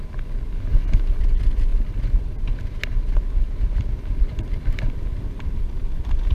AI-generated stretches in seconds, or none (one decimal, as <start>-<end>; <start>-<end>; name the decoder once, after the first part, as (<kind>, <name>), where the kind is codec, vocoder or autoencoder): 0.7-1.2 (vocoder, BigVGAN v2)

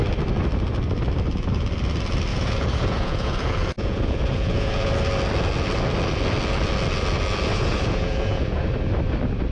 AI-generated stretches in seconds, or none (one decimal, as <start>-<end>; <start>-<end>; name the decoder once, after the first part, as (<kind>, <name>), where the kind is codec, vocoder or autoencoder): 2.3-4.9 (vocoder, Vocos); 7.5-8.6

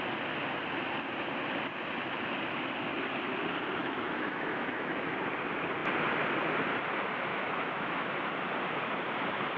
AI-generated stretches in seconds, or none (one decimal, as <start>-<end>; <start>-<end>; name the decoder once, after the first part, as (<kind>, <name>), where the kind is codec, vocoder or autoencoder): 3.8-5.1 (autoencoder, DAC-VAE); 7.3-8.0

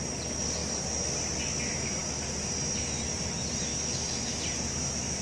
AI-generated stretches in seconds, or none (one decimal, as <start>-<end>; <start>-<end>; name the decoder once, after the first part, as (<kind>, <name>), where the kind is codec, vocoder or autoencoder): 3.7-4.4 (autoencoder, DAC-VAE)

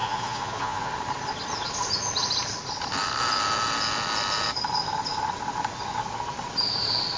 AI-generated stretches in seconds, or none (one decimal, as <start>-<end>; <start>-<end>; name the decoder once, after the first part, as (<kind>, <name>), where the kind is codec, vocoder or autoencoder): 0.0-0.9 (vocoder, Vocos)